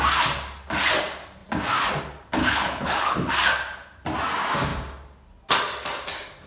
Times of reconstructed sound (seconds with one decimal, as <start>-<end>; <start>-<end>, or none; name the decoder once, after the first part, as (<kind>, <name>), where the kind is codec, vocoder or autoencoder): 2.4-3.3 (codec, HILCodec)